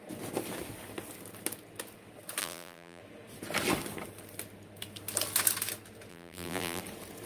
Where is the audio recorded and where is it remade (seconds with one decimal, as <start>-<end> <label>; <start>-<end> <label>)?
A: 0.0-2.4 recorded; 2.4-3.0 remade; 3.0-6.1 recorded; 6.1-6.8 remade; 6.8-7.3 recorded